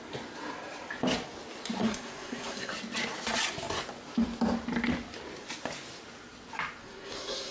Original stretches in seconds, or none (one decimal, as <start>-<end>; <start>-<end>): 0.0-1.8; 2.7-6.8